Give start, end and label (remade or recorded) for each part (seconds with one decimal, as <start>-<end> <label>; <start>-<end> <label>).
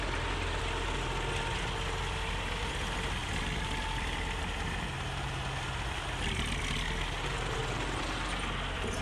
0.0-9.0 recorded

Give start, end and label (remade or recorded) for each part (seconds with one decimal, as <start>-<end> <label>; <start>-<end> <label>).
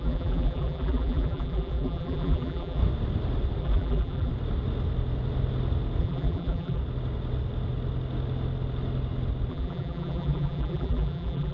0.0-2.8 remade; 2.8-3.6 recorded; 3.6-4.3 remade; 4.3-6.0 recorded; 6.0-6.8 remade; 6.8-9.5 recorded; 9.5-11.5 remade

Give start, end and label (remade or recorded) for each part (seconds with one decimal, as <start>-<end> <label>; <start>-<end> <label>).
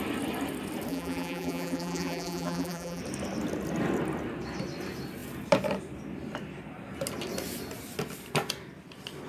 0.0-0.9 recorded; 0.9-3.0 remade; 3.0-9.3 recorded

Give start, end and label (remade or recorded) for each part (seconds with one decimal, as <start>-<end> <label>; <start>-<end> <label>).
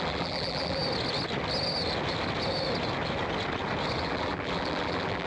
0.0-0.8 remade; 0.8-4.0 recorded; 4.0-5.3 remade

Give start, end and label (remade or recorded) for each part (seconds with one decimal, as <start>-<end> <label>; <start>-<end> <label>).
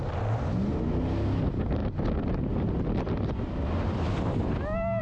0.0-5.0 recorded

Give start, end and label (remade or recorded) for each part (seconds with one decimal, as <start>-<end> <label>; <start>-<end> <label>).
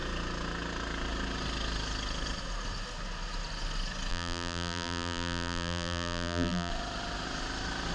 0.0-4.1 recorded; 4.1-6.7 remade; 6.7-7.9 recorded